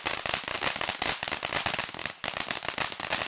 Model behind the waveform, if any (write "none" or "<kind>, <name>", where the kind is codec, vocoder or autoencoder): none